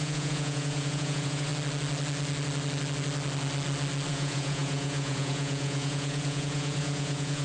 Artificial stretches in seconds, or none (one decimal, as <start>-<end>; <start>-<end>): 0.0-1.5; 4.1-7.4